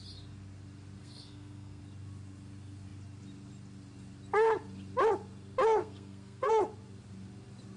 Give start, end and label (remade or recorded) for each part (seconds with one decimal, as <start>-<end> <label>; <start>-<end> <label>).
0.0-1.0 recorded; 1.0-1.8 remade; 1.8-5.8 recorded; 5.8-6.5 remade; 6.5-7.8 recorded